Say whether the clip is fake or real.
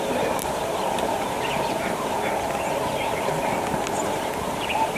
real